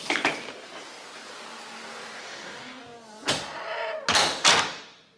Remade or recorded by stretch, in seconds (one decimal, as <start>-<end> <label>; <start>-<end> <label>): 0.0-2.2 recorded; 2.2-2.8 remade; 2.8-5.2 recorded